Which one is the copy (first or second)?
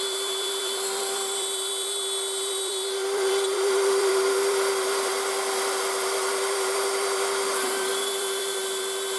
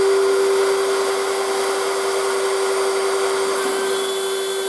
first